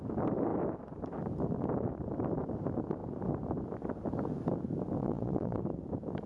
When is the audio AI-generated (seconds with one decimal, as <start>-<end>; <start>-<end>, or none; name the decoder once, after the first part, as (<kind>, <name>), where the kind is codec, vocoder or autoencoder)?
5.0-5.6 (vocoder, WaveNeXt)